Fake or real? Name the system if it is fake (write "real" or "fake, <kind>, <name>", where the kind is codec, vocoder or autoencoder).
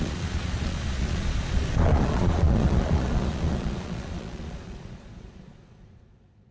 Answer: fake, vocoder, Vocos